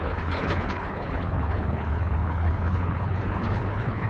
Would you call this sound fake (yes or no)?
yes